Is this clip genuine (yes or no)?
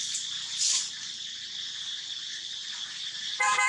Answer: yes